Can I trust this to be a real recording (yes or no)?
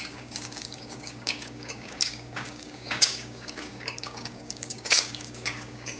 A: no